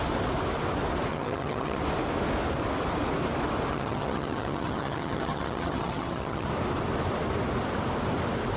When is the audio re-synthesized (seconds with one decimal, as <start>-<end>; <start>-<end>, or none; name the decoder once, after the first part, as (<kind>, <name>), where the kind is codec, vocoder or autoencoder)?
1.1-1.8 (vocoder, HiFi-GAN); 3.7-6.5

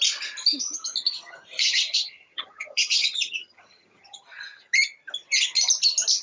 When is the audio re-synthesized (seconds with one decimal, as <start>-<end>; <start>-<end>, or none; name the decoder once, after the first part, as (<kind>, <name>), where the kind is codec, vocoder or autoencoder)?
1.6-4.2 (vocoder, HiFi-GAN)

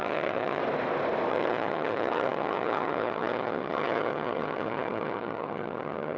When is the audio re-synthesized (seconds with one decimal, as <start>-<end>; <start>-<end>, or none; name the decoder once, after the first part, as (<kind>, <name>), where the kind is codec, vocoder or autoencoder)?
0.0-0.6 (vocoder, HiFi-GAN); 1.3-6.2

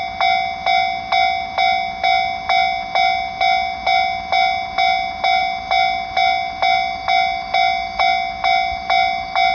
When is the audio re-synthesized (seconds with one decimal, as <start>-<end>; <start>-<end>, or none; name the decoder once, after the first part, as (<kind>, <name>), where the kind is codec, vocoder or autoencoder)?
none

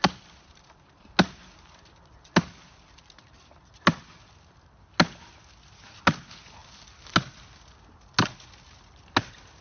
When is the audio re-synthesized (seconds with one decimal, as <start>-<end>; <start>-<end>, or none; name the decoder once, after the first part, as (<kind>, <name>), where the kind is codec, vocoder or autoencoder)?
none

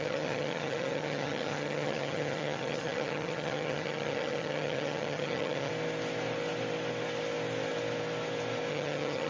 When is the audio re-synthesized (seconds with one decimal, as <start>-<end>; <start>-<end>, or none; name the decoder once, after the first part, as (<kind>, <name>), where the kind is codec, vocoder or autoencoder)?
0.0-5.7 (vocoder, HiFi-GAN); 8.7-9.3

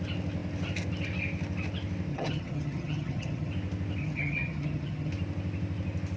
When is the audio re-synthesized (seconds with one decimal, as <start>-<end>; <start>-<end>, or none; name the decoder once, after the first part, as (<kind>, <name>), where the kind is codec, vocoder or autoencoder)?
2.1-3.5 (vocoder, HiFi-GAN); 4.0-5.1

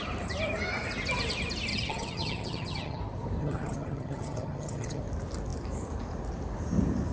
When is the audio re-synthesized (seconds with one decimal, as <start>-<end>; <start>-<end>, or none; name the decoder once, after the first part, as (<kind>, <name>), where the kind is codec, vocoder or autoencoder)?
1.7-3.0 (vocoder, HiFi-GAN); 3.4-5.0